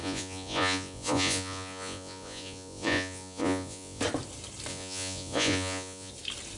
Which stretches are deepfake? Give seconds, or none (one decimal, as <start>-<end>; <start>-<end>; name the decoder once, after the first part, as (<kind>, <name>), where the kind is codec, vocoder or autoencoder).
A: 0.0-4.0 (vocoder, Vocos); 4.7-6.1